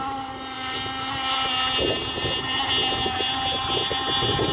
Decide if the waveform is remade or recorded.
recorded